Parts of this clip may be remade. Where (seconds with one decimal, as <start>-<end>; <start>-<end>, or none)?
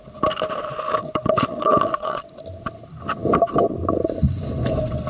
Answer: 1.0-2.3